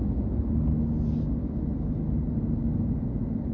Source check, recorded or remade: recorded